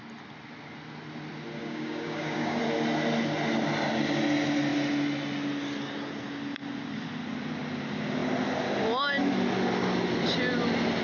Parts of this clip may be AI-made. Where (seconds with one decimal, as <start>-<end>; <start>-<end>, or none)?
1.6-2.6